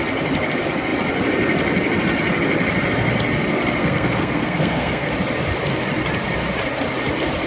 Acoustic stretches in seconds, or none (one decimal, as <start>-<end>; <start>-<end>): 0.0-3.8; 5.1-7.5